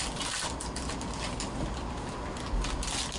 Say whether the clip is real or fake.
real